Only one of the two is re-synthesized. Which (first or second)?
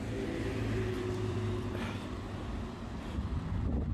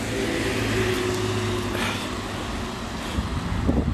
first